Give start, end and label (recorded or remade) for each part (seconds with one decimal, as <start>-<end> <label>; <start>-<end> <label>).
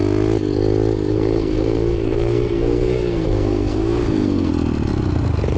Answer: 0.0-1.1 recorded; 1.1-4.5 remade; 4.5-5.6 recorded